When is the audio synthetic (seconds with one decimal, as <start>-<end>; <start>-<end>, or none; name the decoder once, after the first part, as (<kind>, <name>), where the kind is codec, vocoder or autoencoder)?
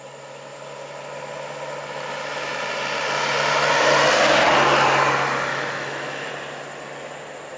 5.5-6.3 (autoencoder, DAC-VAE)